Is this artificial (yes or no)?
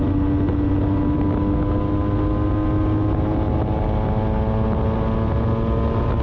no